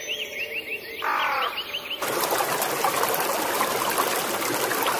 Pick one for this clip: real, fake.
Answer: real